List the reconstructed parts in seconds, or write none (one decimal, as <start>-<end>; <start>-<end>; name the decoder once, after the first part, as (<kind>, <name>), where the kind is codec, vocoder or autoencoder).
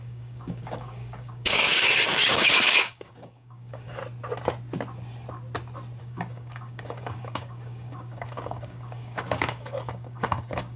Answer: 0.0-4.0 (codec, DAC); 6.0-10.8